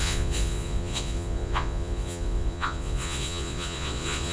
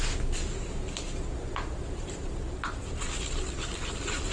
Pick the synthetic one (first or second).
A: first